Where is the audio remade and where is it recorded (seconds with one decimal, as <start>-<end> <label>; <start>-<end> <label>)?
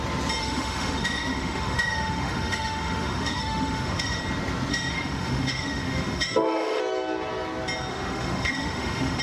0.0-0.4 recorded; 0.4-4.2 remade; 4.2-4.7 recorded; 4.7-6.8 remade; 6.8-7.9 recorded; 7.9-9.2 remade